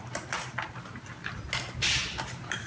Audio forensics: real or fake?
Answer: real